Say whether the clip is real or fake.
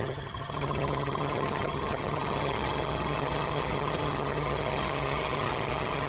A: fake